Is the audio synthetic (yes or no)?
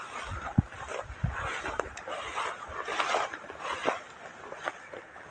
no